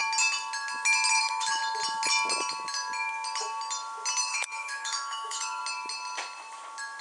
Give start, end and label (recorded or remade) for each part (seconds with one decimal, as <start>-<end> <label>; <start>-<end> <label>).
0.0-1.2 recorded; 1.2-1.6 remade; 1.6-4.2 recorded; 4.2-5.6 remade; 5.6-7.0 recorded